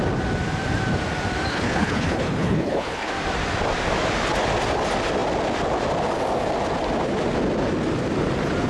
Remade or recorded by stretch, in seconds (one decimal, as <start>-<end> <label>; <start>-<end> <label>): 0.0-1.5 recorded; 1.5-3.1 remade; 3.1-8.7 recorded